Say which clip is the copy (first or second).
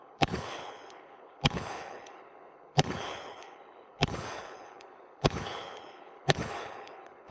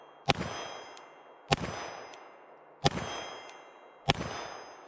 first